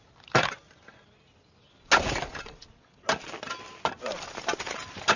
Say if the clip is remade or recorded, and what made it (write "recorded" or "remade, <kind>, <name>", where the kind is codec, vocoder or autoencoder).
recorded